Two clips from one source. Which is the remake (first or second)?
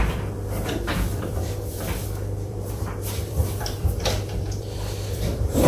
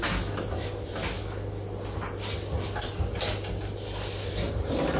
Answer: first